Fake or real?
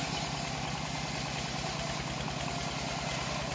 real